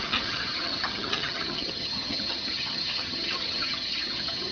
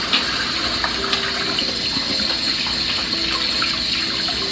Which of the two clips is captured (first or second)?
second